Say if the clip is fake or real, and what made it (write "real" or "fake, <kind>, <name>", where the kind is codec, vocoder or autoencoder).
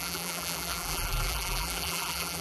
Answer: fake, vocoder, BigVGAN v2